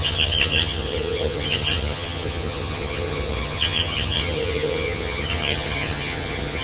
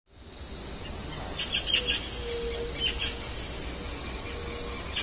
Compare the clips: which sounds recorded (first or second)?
second